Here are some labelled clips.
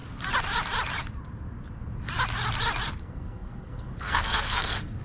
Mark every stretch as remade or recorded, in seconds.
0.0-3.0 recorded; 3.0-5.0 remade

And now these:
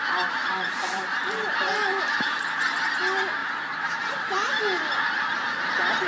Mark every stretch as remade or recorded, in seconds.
0.0-0.4 recorded; 0.4-2.5 remade; 2.5-6.1 recorded

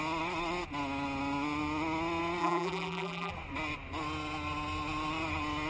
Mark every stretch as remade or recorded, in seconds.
0.0-2.4 recorded; 2.4-3.3 remade; 3.3-5.7 recorded

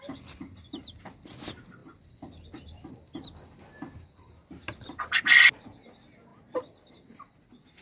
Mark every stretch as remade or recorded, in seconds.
0.0-7.8 recorded

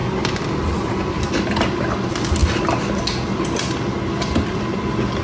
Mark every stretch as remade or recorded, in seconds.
0.0-1.1 remade; 1.1-5.2 recorded

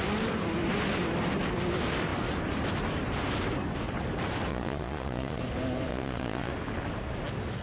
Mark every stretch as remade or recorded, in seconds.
0.0-4.5 recorded; 4.5-5.4 remade; 5.4-5.9 recorded; 5.9-6.5 remade; 6.5-7.6 recorded

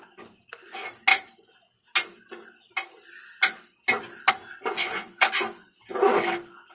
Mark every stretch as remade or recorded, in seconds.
0.0-4.8 recorded; 4.8-5.3 remade; 5.3-6.7 recorded